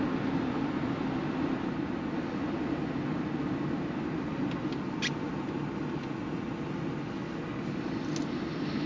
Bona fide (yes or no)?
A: yes